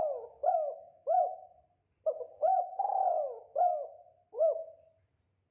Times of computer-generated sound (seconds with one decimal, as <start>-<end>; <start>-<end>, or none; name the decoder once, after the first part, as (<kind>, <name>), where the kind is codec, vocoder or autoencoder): 0.4-1.3 (autoencoder, DAC-VAE)